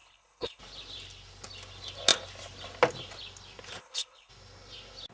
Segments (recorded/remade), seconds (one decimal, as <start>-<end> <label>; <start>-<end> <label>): 0.0-0.6 remade; 0.6-3.8 recorded; 3.8-4.3 remade; 4.3-5.1 recorded